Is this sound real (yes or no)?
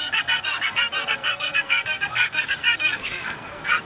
no